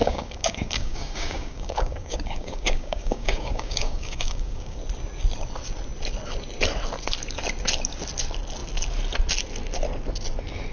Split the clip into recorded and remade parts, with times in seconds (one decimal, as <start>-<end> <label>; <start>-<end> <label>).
0.0-4.8 remade; 4.8-10.7 recorded